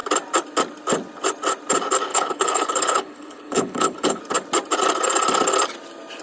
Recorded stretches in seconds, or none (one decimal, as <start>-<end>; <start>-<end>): 0.0-2.1; 4.2-6.2